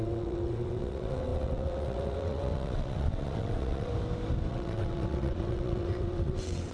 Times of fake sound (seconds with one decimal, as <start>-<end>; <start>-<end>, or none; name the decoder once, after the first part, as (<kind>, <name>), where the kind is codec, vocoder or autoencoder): 0.0-3.9 (vocoder, WaveNeXt); 4.5-6.7